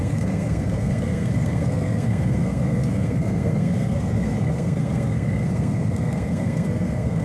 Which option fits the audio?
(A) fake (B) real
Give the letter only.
A